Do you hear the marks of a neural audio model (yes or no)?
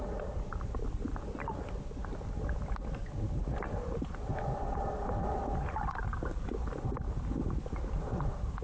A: no